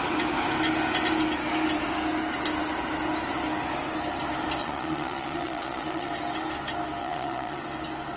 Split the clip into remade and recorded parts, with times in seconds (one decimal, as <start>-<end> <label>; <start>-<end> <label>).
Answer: 0.0-4.6 recorded; 4.6-6.1 remade; 6.1-7.0 recorded; 7.0-7.6 remade; 7.6-8.2 recorded